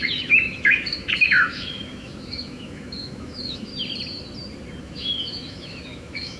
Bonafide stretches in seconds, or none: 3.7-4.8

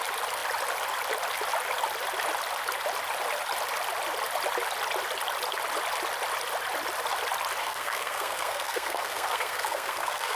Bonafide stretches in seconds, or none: 0.0-7.6

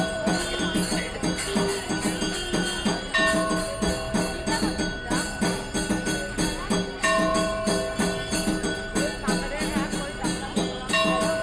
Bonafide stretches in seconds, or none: 0.0-11.4

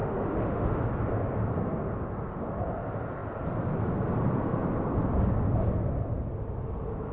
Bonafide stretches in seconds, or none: 0.9-7.1